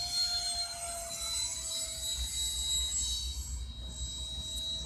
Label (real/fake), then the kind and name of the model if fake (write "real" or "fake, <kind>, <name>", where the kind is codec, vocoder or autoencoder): real